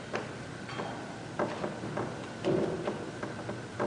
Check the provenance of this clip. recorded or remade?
recorded